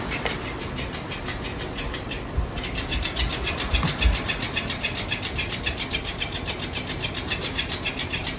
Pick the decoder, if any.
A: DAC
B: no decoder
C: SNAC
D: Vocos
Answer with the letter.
B